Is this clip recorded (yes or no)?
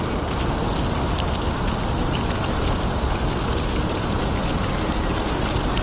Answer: yes